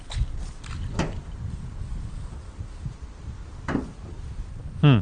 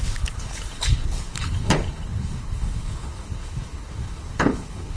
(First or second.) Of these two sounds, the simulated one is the second